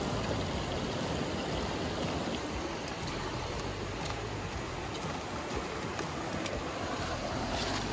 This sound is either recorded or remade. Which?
recorded